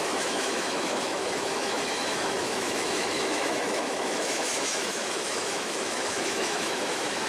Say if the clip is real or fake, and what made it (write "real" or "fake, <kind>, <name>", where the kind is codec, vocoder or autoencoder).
fake, autoencoder, DAC-VAE